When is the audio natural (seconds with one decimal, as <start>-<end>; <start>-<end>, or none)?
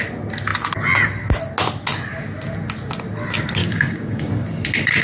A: 0.0-3.6; 4.3-5.0